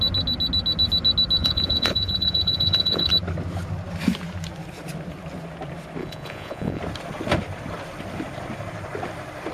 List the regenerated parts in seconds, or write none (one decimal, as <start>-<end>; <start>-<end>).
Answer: 1.4-3.1; 6.0-6.8